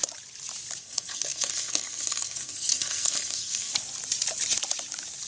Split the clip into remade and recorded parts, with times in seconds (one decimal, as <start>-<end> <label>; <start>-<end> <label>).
0.0-0.8 recorded; 0.8-3.7 remade; 3.7-5.3 recorded